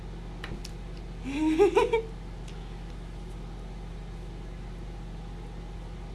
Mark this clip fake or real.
real